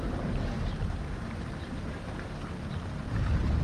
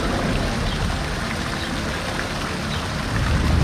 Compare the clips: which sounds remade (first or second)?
first